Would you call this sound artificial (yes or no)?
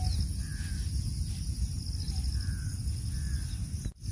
no